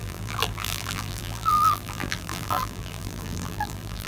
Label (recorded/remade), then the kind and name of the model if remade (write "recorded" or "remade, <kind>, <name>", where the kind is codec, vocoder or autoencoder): remade, vocoder, BigVGAN v2